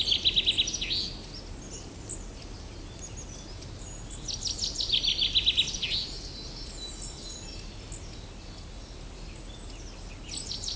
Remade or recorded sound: recorded